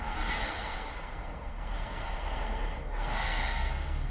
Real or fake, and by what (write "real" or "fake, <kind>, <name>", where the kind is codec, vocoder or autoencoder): fake, codec, SNAC